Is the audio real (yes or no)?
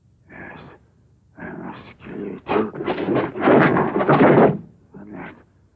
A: yes